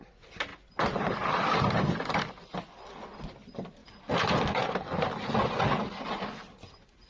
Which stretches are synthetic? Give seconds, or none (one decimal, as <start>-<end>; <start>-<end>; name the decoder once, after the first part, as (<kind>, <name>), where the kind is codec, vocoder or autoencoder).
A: none